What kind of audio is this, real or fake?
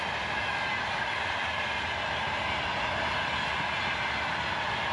real